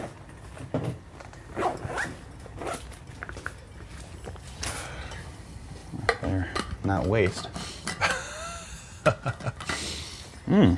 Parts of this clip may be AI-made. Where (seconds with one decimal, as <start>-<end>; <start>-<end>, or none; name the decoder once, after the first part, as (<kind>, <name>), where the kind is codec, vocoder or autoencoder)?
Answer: none